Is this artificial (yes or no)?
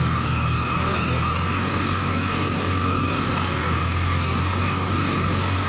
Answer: yes